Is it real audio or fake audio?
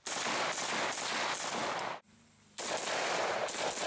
real